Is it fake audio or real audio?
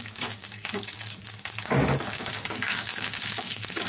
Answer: fake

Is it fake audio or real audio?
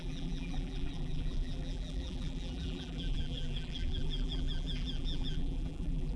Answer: fake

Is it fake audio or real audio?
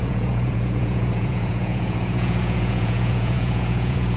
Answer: fake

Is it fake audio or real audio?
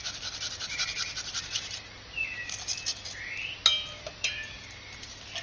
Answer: real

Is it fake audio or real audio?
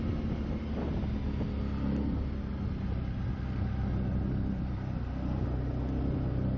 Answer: real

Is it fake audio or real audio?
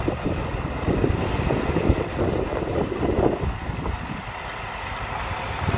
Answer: real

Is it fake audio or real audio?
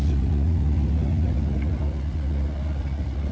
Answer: fake